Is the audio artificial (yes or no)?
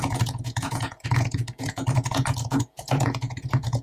yes